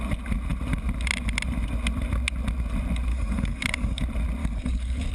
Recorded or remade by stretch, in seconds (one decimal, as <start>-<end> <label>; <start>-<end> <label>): 0.0-3.1 recorded; 3.1-4.0 remade; 4.0-4.4 recorded; 4.4-5.1 remade